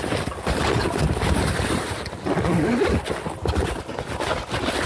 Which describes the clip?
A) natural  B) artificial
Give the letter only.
A